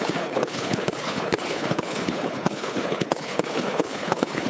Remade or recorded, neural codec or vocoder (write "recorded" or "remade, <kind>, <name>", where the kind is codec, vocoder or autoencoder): remade, codec, HILCodec